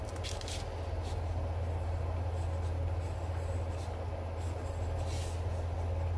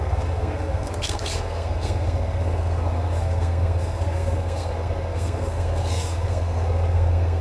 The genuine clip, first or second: first